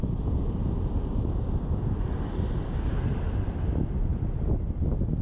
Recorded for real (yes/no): yes